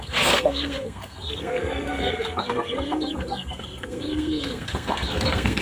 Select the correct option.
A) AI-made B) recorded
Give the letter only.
A